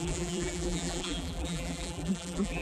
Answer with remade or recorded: remade